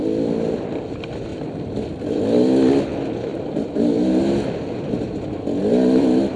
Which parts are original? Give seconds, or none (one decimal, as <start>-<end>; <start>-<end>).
0.0-6.4